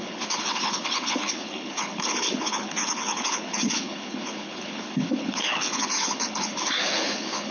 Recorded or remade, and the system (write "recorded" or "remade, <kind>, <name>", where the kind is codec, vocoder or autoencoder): remade, codec, HILCodec